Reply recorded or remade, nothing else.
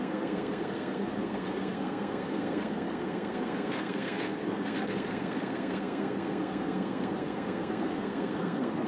remade